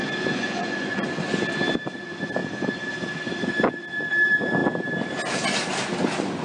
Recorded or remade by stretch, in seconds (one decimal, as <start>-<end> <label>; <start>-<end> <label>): 0.0-1.1 remade; 1.1-6.4 recorded